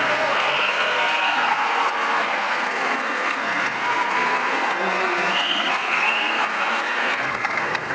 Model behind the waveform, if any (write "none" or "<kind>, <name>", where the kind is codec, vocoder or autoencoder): codec, SNAC